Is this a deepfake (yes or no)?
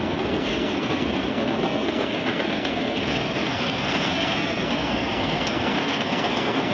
yes